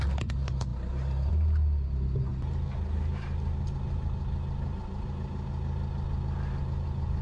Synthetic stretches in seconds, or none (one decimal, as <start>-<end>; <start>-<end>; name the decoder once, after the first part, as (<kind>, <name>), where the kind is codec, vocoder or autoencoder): none